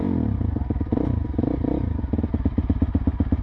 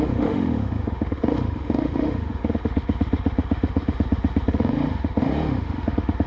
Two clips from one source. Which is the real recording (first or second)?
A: first